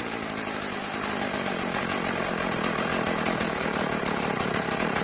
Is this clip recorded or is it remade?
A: recorded